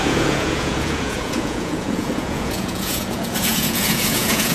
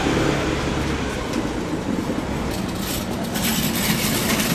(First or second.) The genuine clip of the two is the second